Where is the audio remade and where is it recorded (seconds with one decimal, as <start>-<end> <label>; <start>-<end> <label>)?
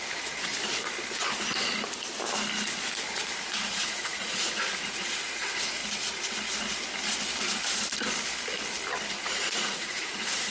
0.0-0.5 remade; 0.5-3.4 recorded; 3.4-5.8 remade; 5.8-9.1 recorded; 9.1-10.5 remade